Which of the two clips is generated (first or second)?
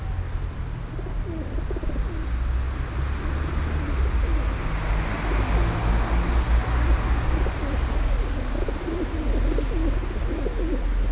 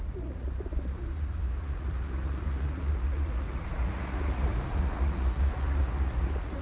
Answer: second